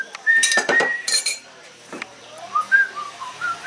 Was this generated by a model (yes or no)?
yes